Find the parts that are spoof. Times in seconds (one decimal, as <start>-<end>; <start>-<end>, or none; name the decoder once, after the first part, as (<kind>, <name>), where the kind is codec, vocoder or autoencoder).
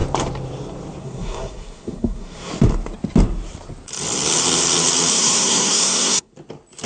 1.0-2.5 (codec, SNAC); 5.1-6.3